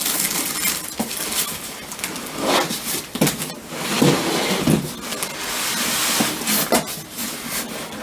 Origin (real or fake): real